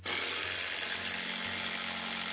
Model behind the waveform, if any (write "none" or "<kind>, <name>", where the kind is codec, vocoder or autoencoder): none